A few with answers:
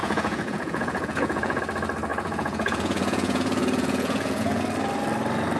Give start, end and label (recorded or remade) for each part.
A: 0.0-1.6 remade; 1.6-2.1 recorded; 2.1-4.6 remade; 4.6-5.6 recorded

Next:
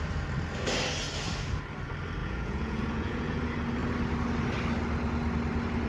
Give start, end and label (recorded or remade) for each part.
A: 0.0-2.2 recorded; 2.2-3.4 remade; 3.4-5.9 recorded